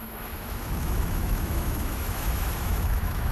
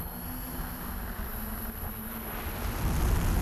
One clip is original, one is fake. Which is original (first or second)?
second